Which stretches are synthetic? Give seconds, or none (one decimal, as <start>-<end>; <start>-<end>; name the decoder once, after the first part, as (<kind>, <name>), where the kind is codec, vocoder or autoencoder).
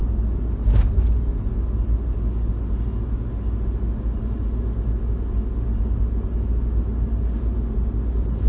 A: none